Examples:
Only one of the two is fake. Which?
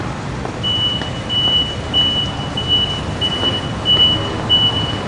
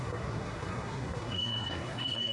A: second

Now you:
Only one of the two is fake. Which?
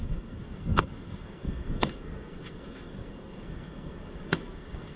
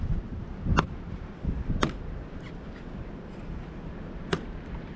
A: first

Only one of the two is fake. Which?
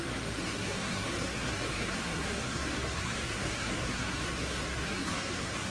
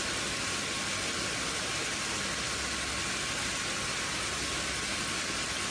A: first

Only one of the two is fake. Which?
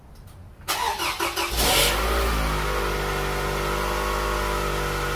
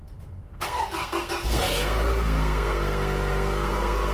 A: second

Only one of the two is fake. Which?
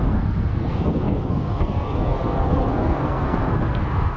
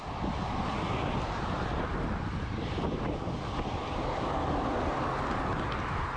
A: first